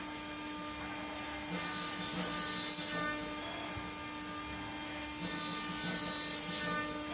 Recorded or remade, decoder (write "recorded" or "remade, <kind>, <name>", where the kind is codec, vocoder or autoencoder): recorded